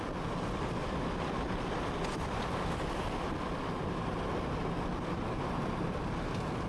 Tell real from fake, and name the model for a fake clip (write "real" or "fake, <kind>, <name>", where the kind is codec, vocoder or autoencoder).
real